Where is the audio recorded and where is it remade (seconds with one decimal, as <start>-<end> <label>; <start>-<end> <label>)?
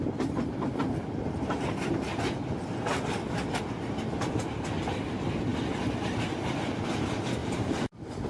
0.0-1.0 recorded; 1.0-2.5 remade; 2.5-7.4 recorded; 7.4-8.3 remade